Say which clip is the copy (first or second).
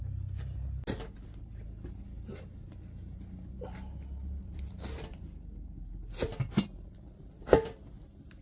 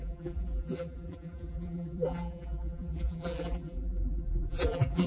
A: second